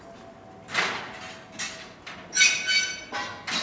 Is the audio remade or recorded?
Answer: recorded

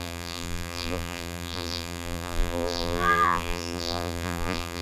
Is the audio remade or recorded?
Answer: remade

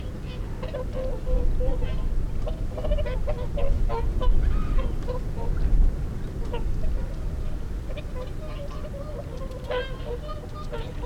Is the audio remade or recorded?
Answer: recorded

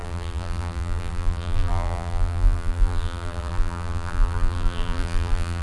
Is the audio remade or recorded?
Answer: remade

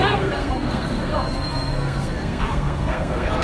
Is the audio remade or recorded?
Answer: remade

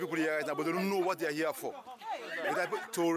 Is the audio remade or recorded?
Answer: recorded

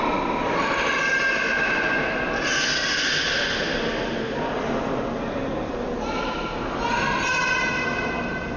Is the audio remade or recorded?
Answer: recorded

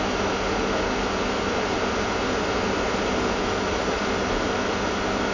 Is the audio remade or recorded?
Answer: recorded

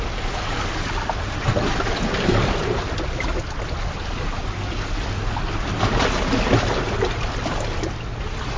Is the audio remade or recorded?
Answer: recorded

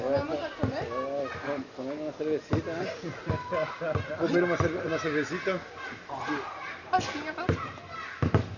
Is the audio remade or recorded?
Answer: recorded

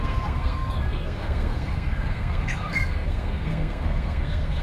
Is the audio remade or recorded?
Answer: remade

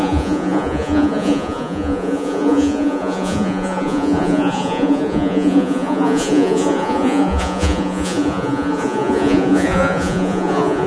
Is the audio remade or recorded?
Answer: remade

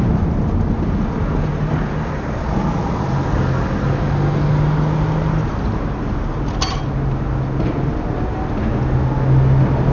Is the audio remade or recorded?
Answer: recorded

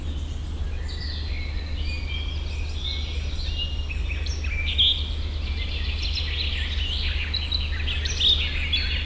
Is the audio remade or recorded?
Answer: recorded